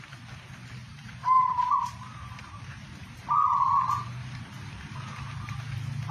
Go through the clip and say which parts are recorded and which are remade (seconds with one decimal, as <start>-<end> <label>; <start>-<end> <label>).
0.0-0.8 recorded; 0.8-3.3 remade; 3.3-4.2 recorded; 4.2-6.1 remade